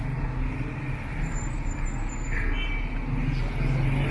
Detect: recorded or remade recorded